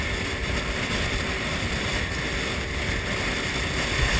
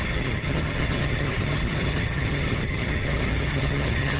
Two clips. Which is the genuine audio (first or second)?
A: first